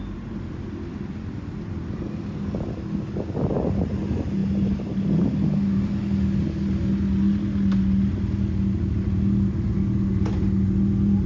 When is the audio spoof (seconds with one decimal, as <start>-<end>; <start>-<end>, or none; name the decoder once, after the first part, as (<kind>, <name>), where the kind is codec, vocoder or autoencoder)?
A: none